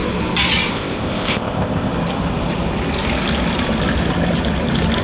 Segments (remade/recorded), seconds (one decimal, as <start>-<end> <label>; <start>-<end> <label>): 0.0-0.7 recorded; 0.7-1.9 remade; 1.9-5.0 recorded